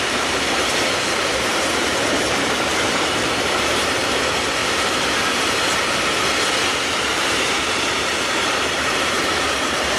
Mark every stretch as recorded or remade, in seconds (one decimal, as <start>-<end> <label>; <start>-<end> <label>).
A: 0.0-4.6 remade; 4.6-6.7 recorded; 6.7-10.0 remade